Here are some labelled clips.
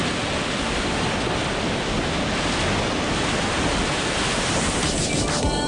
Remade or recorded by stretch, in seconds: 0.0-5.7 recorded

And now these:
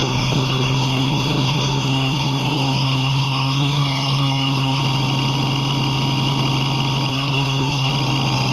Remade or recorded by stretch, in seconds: 0.0-4.8 remade; 4.8-7.1 recorded; 7.1-7.9 remade; 7.9-8.5 recorded

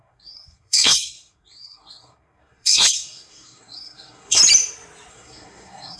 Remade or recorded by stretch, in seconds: 0.0-4.4 remade; 4.4-5.1 recorded; 5.1-6.0 remade

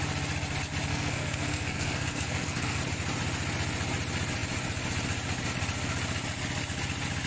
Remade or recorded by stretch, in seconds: 0.0-0.9 recorded; 0.9-2.8 remade; 2.8-7.3 recorded

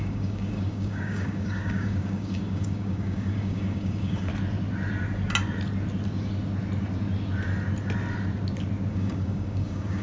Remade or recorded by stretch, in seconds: 0.0-4.3 remade; 4.3-8.9 recorded; 8.9-10.0 remade

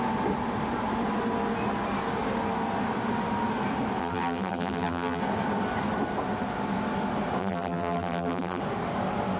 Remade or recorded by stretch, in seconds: 0.0-4.0 recorded; 4.0-5.2 remade; 5.2-7.4 recorded; 7.4-8.6 remade; 8.6-9.4 recorded